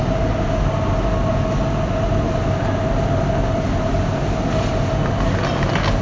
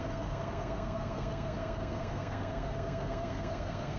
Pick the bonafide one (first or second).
first